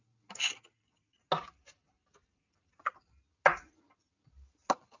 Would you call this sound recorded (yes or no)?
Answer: yes